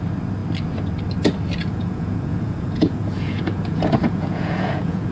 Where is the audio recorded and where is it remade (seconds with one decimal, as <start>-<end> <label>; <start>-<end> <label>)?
0.0-1.6 recorded; 1.6-5.1 remade